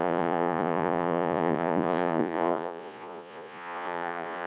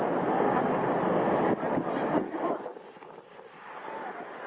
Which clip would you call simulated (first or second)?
first